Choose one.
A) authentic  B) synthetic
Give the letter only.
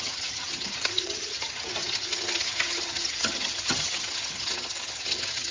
B